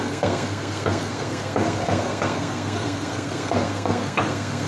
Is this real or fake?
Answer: fake